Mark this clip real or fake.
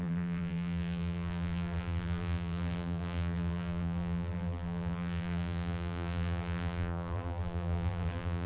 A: fake